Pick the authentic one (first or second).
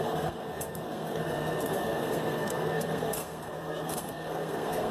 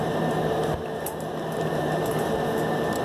second